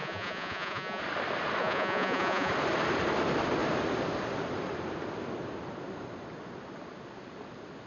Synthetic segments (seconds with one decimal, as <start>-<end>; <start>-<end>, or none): 0.0-1.0; 1.6-2.5